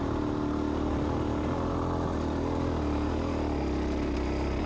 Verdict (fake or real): real